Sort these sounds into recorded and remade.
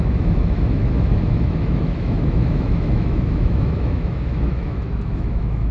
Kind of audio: remade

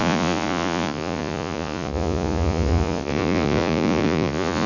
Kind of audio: remade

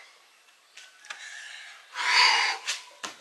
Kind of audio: recorded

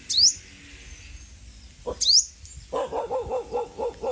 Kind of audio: recorded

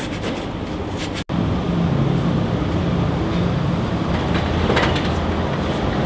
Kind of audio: recorded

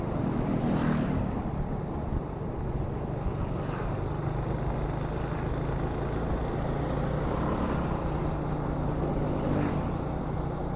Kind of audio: recorded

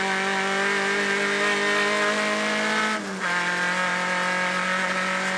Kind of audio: recorded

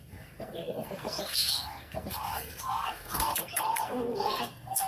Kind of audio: remade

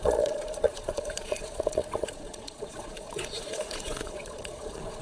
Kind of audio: remade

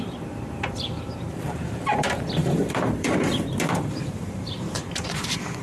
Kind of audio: remade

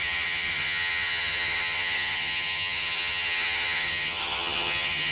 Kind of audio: remade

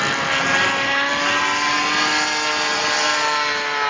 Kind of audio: recorded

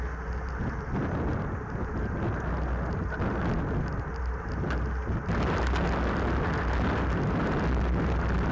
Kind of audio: recorded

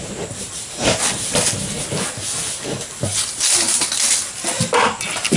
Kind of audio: recorded